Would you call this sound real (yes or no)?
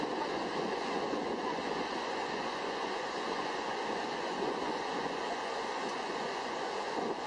no